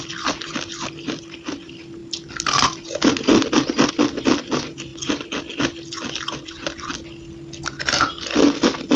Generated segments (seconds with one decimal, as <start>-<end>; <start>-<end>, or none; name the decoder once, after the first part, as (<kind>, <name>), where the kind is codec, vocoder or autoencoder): none